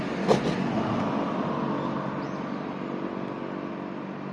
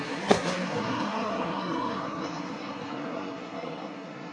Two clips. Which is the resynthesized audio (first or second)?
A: second